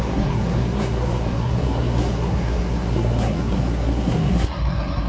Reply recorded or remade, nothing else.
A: remade